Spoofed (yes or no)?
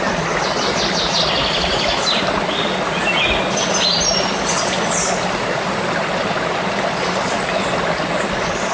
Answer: no